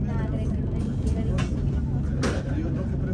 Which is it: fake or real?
real